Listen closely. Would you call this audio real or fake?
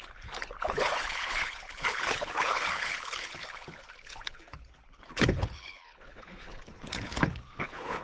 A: fake